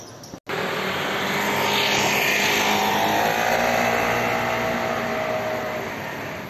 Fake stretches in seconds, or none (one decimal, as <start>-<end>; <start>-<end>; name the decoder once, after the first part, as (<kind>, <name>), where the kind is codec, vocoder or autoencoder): none